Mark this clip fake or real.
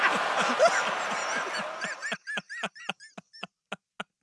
real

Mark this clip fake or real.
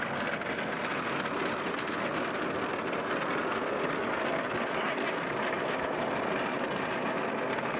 real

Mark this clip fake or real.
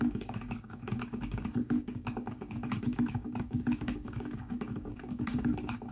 fake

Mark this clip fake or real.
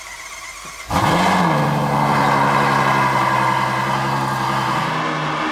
real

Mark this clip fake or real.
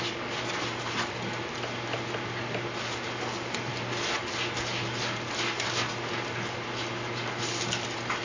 real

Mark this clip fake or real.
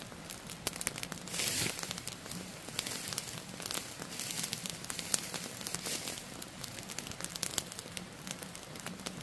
real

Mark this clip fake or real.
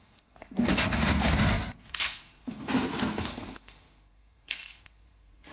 fake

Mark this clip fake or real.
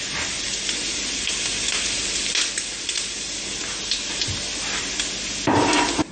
real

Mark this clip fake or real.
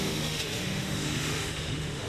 fake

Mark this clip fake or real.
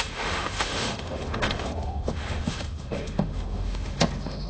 fake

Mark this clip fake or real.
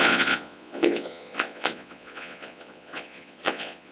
fake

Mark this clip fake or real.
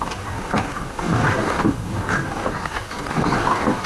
fake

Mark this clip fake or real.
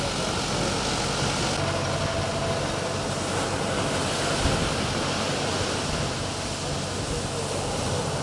real